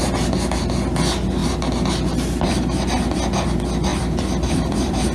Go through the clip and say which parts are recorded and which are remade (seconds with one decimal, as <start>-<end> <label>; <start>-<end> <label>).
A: 0.0-3.9 recorded; 3.9-5.1 remade